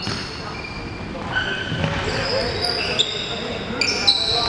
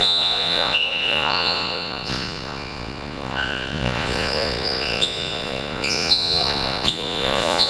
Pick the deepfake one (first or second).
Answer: second